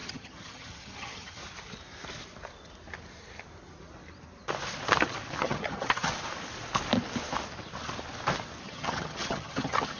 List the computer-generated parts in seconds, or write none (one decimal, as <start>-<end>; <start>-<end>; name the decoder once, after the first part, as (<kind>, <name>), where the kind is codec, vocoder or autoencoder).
0.0-1.4 (vocoder, HiFi-GAN); 5.4-6.1; 8.6-10.0